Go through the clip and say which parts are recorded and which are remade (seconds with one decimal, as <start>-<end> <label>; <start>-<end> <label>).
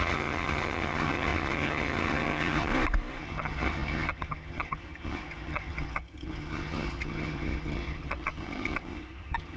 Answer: 0.0-2.7 remade; 2.7-3.2 recorded; 3.2-9.6 remade